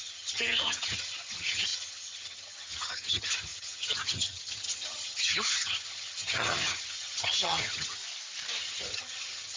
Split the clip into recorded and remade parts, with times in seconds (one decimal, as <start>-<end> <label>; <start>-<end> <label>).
0.0-8.0 remade; 8.0-8.6 recorded; 8.6-9.6 remade